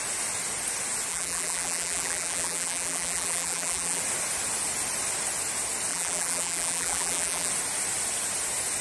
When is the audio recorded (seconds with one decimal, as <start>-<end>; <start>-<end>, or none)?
0.0-1.1; 4.0-5.9; 7.5-8.8